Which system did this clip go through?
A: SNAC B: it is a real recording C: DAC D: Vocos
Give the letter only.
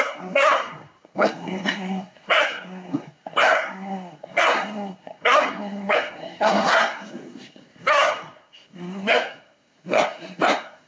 A